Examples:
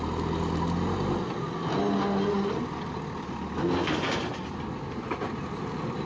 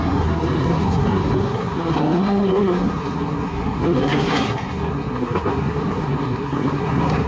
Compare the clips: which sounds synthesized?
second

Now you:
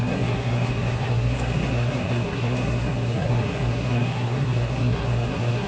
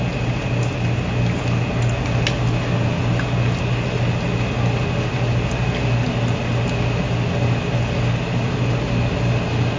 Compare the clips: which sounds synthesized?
first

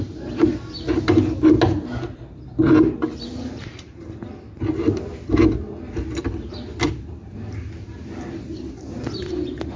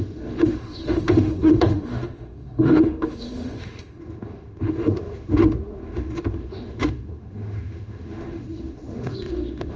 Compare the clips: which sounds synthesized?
second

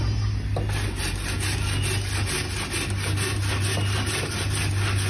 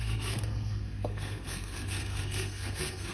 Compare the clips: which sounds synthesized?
second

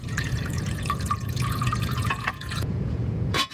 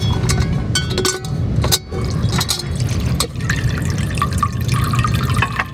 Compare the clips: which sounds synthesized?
first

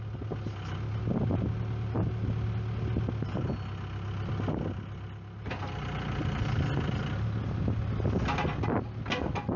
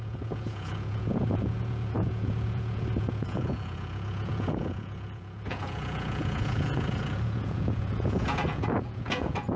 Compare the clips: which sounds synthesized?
second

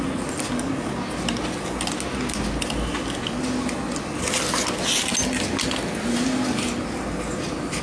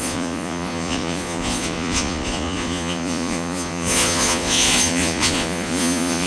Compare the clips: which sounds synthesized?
second